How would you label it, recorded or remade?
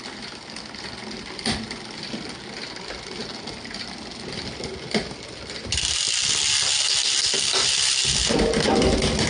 recorded